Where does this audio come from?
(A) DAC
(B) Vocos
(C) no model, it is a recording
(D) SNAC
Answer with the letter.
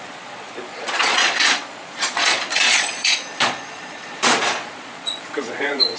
B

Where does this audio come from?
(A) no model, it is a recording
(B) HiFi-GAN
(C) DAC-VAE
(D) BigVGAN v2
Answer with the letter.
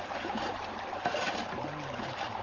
D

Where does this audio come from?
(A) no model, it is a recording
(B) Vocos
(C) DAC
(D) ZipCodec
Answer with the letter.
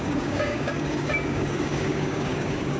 C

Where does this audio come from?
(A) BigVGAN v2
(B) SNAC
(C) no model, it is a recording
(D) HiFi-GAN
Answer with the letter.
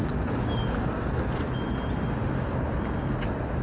C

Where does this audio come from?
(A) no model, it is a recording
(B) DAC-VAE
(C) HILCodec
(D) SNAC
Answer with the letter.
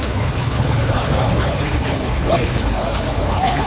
C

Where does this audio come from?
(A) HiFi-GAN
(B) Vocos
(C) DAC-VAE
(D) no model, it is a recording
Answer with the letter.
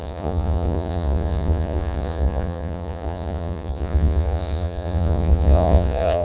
B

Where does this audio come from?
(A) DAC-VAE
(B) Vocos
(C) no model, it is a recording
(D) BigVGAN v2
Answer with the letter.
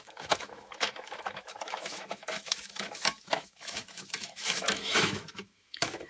A